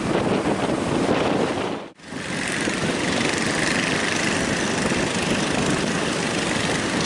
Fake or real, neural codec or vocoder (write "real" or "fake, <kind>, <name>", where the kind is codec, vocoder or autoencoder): real